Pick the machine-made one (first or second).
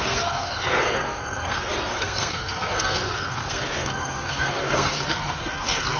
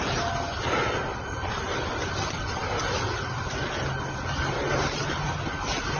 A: first